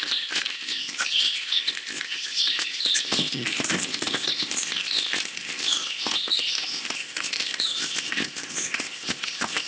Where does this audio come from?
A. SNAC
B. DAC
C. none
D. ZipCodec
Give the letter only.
D